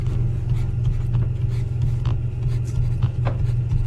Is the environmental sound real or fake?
real